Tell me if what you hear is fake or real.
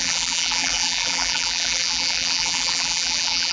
fake